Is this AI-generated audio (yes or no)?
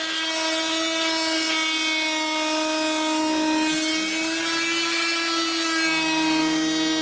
no